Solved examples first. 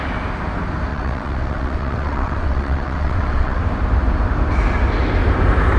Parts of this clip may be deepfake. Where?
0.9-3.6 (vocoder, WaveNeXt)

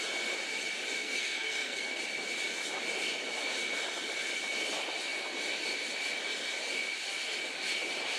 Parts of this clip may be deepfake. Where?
1.0-2.0 (codec, SNAC)

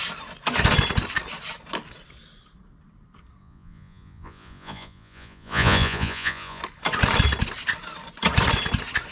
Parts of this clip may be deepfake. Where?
3.4-6.6 (vocoder, Vocos)

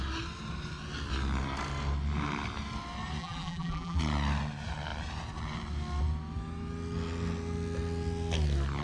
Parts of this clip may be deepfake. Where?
3.2-4.0 (vocoder, BigVGAN v2)

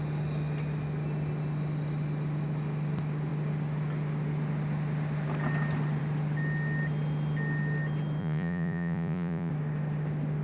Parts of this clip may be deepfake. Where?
8.2-9.5 (vocoder, Vocos)